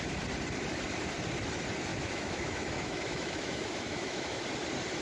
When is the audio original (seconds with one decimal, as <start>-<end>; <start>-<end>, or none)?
0.0-1.9; 4.4-5.0